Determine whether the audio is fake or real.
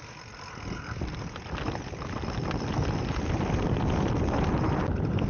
real